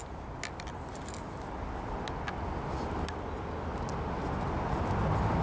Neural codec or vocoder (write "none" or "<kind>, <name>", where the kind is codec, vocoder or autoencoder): none